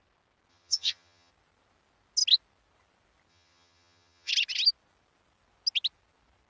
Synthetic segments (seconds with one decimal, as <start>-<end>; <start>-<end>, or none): 0.5-1.3; 3.3-4.3